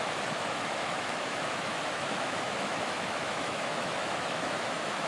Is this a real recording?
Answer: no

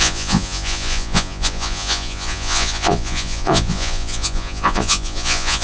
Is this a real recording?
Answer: no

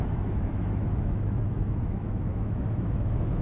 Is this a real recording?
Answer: no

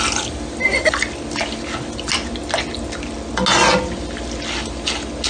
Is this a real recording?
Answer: yes